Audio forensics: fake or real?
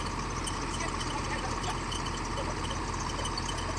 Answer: real